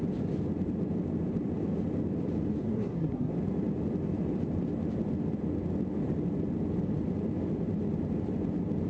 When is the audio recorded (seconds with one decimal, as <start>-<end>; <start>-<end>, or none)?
0.0-2.6; 3.3-8.9